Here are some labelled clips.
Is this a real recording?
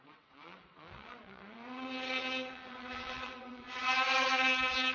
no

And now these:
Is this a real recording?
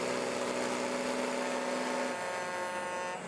yes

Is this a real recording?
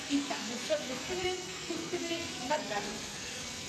no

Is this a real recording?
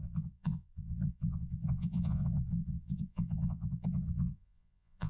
no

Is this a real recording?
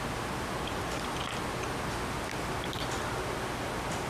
yes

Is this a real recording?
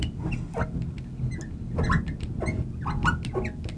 yes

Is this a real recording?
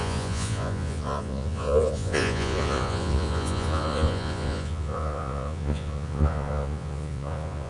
no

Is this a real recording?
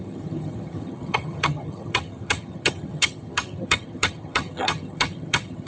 no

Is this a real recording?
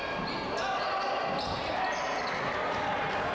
yes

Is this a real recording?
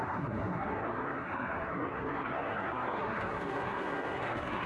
no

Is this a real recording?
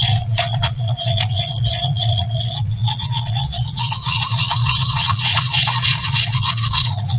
no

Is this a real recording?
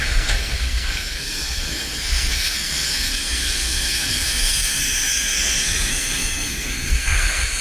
no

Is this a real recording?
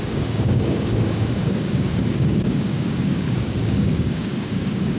no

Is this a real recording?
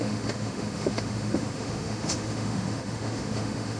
no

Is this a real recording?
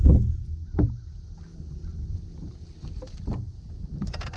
yes